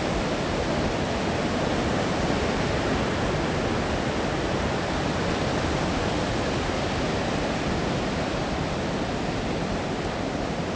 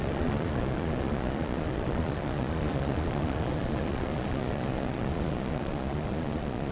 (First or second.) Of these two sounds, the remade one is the second